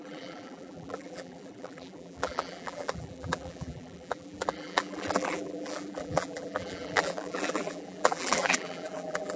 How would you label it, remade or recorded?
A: remade